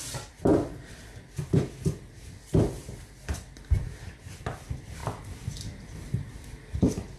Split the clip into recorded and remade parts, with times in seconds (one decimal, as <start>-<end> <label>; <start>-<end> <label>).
0.0-7.2 remade